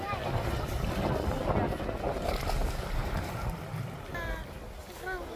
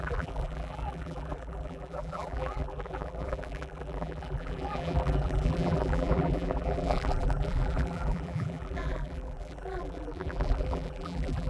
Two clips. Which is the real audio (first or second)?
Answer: first